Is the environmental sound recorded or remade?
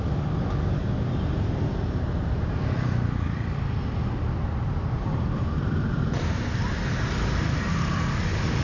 recorded